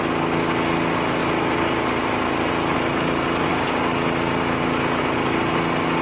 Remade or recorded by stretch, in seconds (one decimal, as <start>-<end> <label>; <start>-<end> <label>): 0.0-6.0 recorded